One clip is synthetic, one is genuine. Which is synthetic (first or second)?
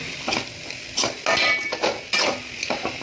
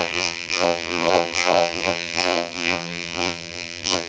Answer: second